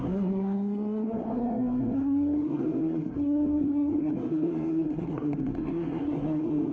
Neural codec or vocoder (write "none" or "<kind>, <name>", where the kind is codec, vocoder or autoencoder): codec, SNAC